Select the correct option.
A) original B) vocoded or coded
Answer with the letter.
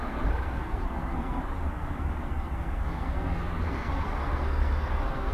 B